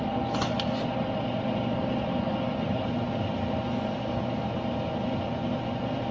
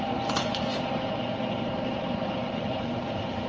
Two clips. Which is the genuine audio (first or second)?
first